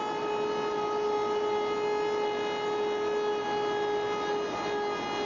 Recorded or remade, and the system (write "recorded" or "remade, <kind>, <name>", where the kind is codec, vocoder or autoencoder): recorded